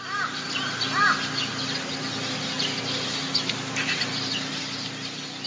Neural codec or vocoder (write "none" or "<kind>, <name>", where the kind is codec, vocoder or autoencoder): none